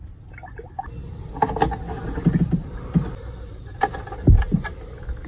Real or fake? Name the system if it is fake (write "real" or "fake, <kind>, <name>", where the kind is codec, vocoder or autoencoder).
real